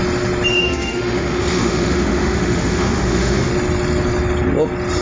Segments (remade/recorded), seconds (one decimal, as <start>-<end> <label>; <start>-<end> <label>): 0.0-0.5 recorded; 0.5-3.5 remade; 3.5-5.0 recorded